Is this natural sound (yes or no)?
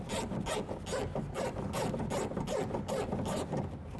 yes